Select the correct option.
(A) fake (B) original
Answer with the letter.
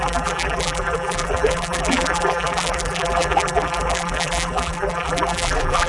A